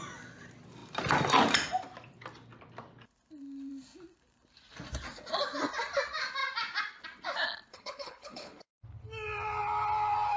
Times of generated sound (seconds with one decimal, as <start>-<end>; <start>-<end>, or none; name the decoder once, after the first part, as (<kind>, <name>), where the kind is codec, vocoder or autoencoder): 7.7-8.6 (codec, HILCodec)